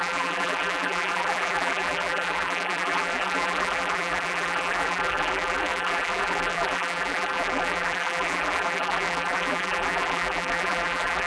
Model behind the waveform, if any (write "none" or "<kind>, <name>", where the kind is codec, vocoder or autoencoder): vocoder, BigVGAN v2